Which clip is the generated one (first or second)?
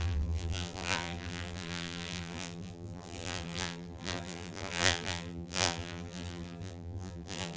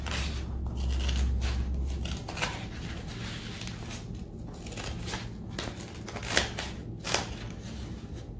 first